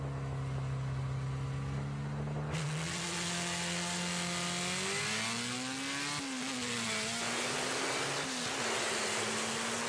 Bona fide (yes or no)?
yes